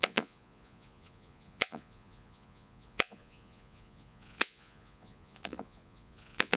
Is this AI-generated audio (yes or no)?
yes